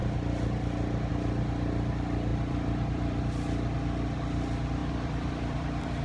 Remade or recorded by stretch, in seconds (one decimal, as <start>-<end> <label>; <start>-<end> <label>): 0.0-2.3 recorded; 2.3-3.2 remade; 3.2-4.8 recorded; 4.8-6.0 remade